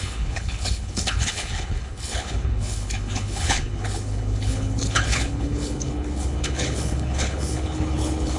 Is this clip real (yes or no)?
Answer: no